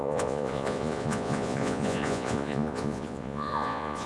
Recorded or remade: remade